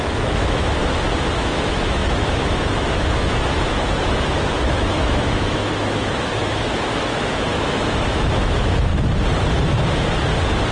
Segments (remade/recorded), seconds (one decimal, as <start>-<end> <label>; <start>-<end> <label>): 0.0-0.8 remade; 0.8-1.4 recorded; 1.4-8.9 remade; 8.9-10.7 recorded